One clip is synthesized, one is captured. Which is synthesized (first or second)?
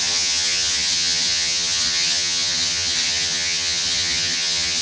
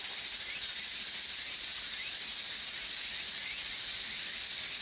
first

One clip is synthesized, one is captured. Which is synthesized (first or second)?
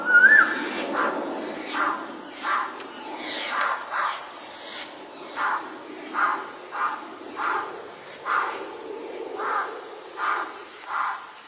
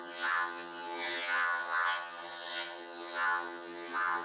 second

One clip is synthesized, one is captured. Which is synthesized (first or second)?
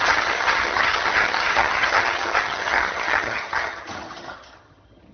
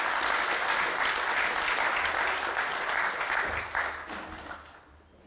first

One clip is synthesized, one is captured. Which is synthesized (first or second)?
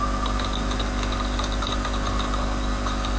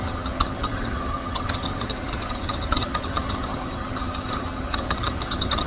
second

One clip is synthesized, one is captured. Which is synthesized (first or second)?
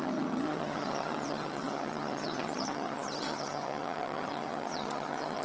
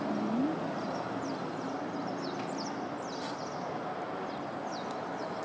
first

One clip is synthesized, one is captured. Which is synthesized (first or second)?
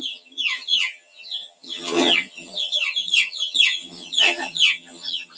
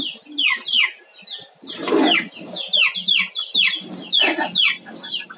first